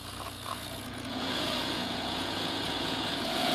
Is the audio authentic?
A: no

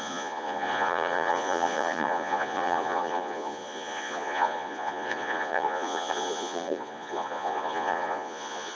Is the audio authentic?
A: no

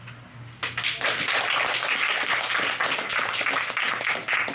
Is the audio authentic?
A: yes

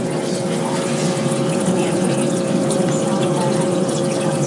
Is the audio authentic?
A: no